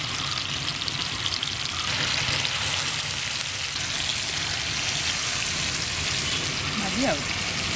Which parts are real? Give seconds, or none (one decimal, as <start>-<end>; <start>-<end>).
0.0-7.8